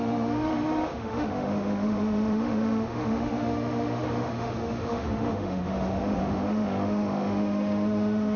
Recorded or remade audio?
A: remade